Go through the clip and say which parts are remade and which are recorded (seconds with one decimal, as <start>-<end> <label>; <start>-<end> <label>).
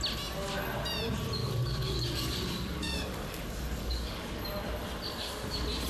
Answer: 0.0-1.4 recorded; 1.4-4.3 remade; 4.3-5.9 recorded